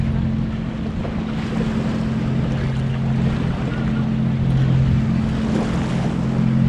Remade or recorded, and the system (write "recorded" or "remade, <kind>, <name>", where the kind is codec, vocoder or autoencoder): recorded